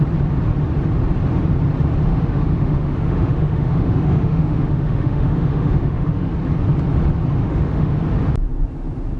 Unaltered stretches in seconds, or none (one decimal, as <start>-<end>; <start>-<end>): 0.0-2.1; 6.3-7.4; 8.0-9.2